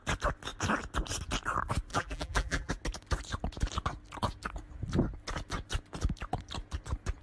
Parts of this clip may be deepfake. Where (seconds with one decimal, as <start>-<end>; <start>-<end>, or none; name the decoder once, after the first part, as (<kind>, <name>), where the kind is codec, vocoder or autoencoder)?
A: 1.9-2.7 (vocoder, BigVGAN v2)